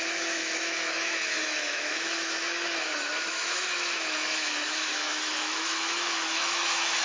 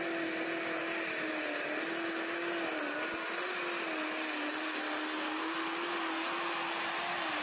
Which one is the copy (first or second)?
first